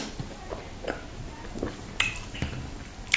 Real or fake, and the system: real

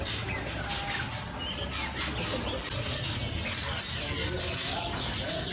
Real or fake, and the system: real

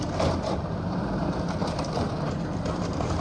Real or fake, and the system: fake, vocoder, BigVGAN v2